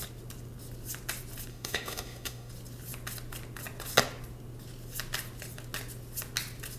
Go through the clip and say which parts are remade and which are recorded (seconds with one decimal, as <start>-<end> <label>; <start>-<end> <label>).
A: 0.0-1.5 recorded; 1.5-2.5 remade; 2.5-6.8 recorded